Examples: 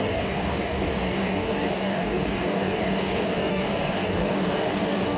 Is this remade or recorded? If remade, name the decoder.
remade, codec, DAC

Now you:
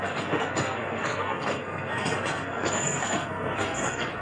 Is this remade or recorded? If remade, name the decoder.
remade, codec, SNAC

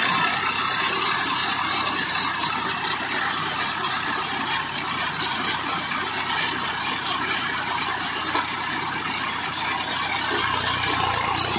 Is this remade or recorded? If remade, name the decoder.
recorded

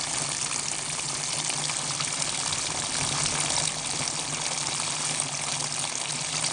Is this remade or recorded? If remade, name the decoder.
recorded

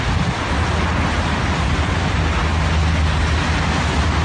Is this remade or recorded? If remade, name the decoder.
recorded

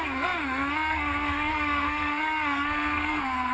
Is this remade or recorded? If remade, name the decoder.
remade, codec, SNAC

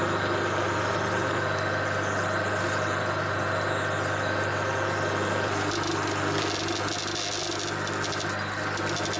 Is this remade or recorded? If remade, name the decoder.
recorded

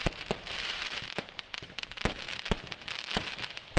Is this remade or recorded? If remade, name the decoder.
remade, vocoder, BigVGAN v2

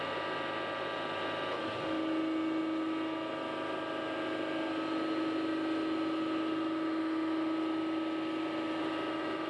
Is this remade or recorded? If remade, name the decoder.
recorded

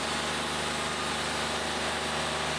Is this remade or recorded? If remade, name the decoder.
recorded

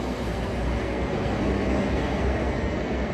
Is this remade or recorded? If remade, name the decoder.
remade, codec, SNAC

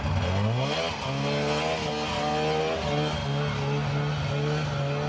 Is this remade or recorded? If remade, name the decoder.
recorded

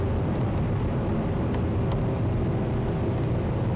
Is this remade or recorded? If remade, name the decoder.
recorded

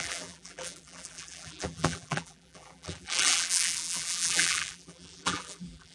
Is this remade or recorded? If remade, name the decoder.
remade, vocoder, BigVGAN v2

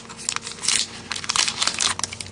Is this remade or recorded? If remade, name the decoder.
recorded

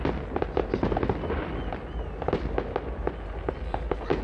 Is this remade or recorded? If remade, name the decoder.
recorded